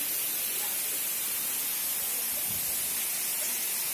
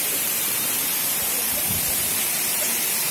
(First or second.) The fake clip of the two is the second